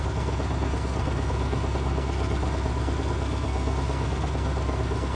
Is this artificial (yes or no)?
yes